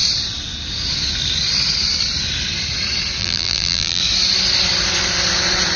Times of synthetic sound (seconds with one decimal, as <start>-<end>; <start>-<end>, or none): 3.2-4.0